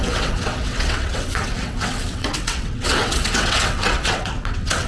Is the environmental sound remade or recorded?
remade